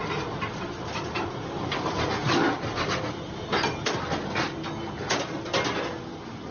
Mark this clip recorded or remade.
recorded